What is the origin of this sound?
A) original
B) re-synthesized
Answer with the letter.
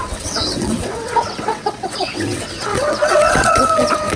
B